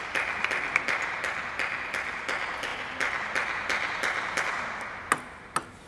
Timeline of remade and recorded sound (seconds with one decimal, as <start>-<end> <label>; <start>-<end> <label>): 0.0-5.9 recorded